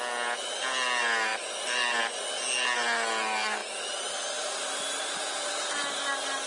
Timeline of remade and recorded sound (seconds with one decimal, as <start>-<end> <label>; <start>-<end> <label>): 0.0-6.5 recorded